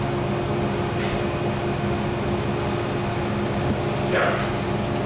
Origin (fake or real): real